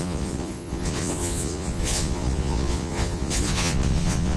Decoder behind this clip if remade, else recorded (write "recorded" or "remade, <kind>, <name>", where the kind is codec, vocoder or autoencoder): remade, vocoder, Vocos